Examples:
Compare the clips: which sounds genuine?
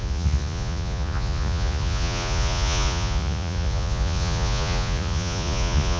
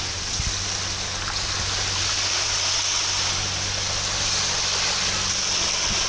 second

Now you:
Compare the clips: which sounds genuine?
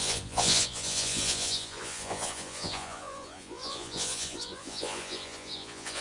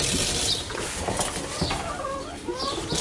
second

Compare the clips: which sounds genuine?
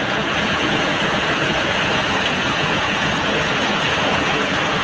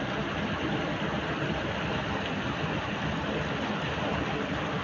second